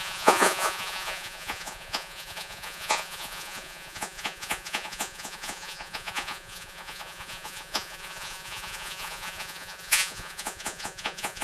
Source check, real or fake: fake